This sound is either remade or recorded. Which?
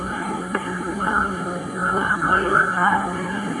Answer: remade